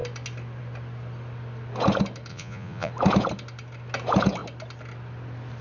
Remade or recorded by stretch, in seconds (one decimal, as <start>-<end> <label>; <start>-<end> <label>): 0.0-2.3 recorded; 2.3-2.9 remade; 2.9-5.6 recorded